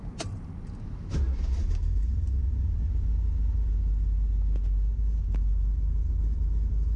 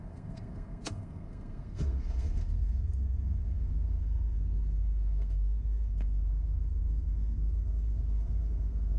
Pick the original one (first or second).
first